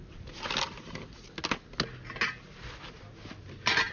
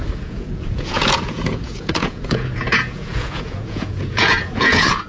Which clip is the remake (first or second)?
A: second